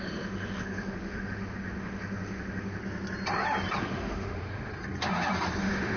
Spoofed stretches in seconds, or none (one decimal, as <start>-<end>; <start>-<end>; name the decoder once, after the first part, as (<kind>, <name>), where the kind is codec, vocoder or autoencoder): 0.0-2.8 (autoencoder, DAC-VAE); 3.8-4.7; 5.6-6.0